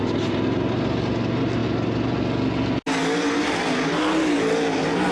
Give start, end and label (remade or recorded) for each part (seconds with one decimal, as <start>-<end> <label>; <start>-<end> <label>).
0.0-5.1 recorded